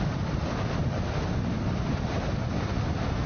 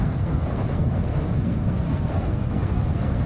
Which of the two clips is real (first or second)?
first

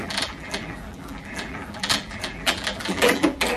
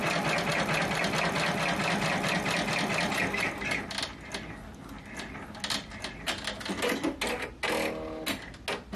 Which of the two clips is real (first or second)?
second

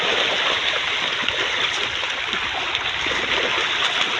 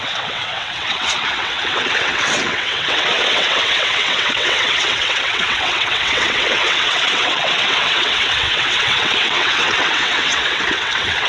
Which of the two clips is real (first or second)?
first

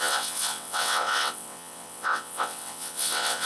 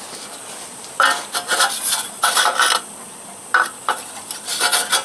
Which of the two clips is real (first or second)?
second